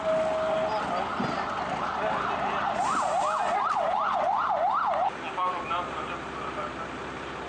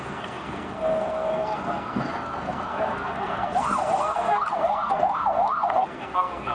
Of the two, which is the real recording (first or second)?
first